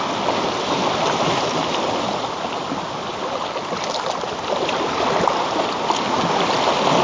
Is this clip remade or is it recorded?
recorded